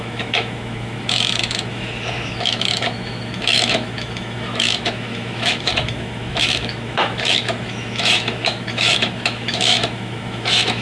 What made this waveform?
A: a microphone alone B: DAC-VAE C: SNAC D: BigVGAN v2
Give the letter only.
B